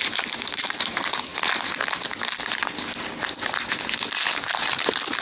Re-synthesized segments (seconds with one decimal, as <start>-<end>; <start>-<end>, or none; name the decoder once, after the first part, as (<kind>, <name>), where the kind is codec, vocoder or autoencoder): 0.0-1.3 (vocoder, BigVGAN v2); 4.4-5.2